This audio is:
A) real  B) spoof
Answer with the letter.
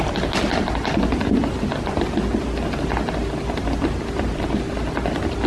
A